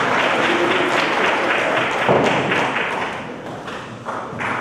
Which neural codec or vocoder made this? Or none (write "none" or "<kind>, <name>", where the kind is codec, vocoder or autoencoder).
none